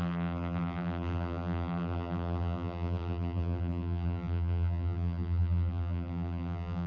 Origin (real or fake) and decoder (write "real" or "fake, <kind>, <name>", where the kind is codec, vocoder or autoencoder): fake, vocoder, BigVGAN v2